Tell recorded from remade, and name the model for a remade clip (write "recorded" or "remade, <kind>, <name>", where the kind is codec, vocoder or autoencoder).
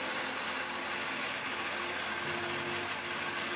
recorded